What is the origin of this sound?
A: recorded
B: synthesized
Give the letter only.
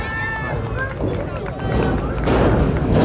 A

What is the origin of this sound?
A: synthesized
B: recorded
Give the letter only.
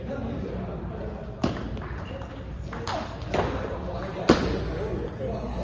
B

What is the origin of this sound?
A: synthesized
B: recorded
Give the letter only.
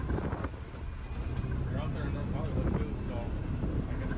B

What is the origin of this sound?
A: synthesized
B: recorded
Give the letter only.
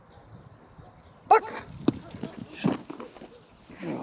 B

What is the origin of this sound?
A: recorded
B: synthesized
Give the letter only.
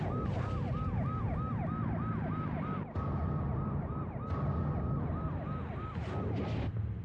A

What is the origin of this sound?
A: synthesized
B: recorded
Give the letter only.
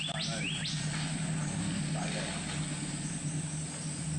B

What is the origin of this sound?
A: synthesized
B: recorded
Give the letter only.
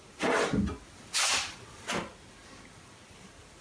B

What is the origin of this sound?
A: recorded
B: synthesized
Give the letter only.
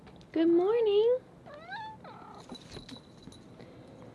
A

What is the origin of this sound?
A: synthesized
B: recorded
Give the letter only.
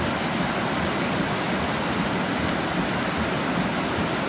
B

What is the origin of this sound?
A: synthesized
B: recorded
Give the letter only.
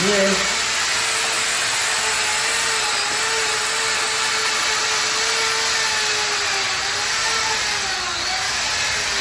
B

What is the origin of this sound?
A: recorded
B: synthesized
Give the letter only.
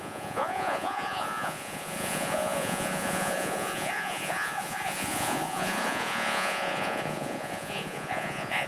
B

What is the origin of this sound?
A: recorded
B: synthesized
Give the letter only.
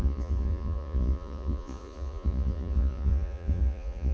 B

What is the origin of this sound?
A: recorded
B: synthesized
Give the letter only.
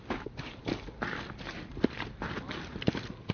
A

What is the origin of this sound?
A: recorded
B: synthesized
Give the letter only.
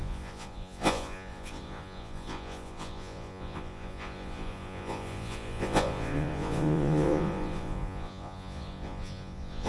B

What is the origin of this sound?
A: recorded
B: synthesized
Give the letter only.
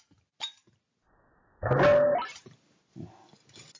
A